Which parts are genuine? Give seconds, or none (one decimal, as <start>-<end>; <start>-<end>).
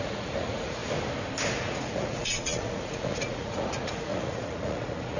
0.8-1.5